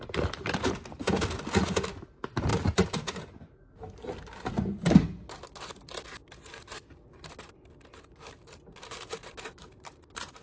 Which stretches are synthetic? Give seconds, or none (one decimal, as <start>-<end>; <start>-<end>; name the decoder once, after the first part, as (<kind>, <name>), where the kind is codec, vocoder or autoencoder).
2.5-4.5 (vocoder, BigVGAN v2); 9.7-10.4